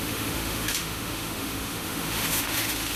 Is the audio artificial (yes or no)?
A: yes